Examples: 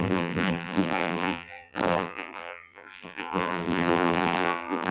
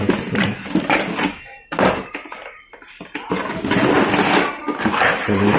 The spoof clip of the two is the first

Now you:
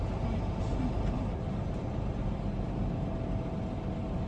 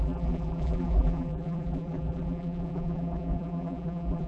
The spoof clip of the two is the second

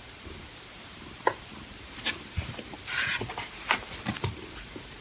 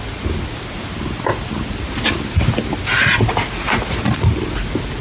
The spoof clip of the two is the first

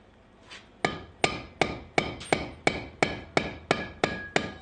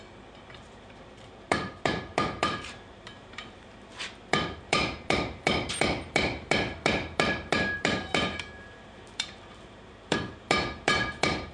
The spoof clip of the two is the second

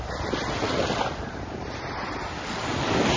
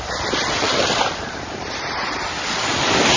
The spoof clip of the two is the second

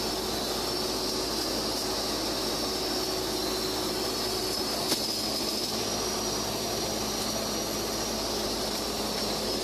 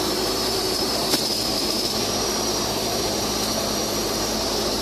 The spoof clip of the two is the second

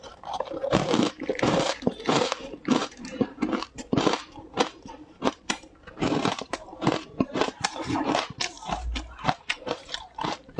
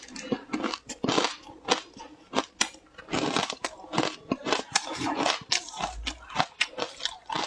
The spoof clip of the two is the first